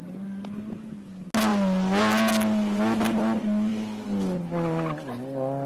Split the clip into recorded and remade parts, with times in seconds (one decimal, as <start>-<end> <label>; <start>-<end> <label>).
0.0-5.7 recorded